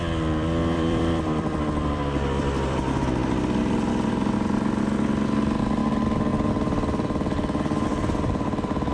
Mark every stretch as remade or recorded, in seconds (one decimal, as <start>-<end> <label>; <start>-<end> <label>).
0.0-0.6 recorded; 0.6-4.1 remade; 4.1-6.3 recorded; 6.3-8.9 remade